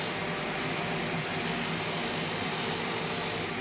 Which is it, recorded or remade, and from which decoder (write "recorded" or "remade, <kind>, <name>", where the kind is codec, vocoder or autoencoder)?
recorded